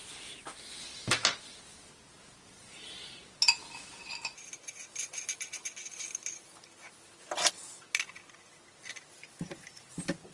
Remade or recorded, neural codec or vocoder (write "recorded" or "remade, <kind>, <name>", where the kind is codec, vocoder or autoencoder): recorded